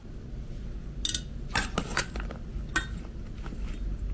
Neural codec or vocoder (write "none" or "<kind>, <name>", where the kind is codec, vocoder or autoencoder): none